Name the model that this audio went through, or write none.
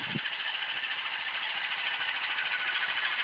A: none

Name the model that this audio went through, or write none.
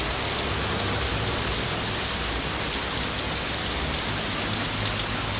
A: none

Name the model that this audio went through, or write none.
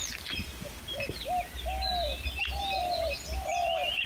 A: none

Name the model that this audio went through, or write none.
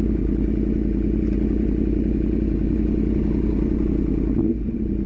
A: none